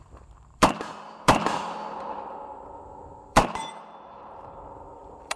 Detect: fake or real fake